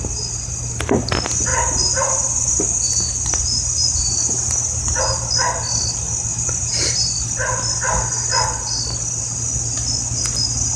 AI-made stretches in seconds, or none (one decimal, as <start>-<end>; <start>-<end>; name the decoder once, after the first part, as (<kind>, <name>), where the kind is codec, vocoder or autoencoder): 1.5-5.0 (vocoder, BigVGAN v2); 6.3-7.1